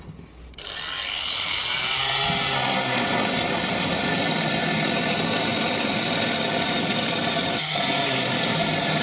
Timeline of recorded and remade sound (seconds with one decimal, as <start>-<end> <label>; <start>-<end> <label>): 0.0-7.8 recorded; 7.8-8.6 remade; 8.6-9.0 recorded